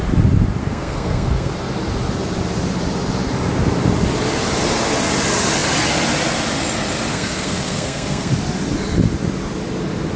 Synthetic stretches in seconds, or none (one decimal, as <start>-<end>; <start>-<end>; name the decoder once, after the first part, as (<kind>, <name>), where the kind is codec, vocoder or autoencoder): 0.6-1.5 (codec, SNAC); 7.1-8.3